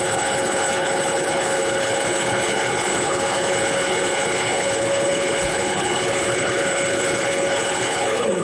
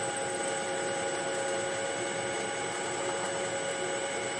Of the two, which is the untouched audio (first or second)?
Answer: second